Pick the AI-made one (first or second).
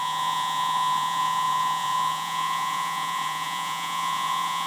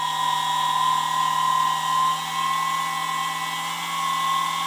first